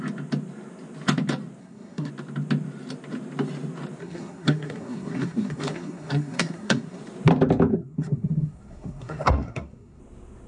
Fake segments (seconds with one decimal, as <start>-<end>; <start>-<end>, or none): 1.6-2.1; 4.0-7.0; 7.7-10.0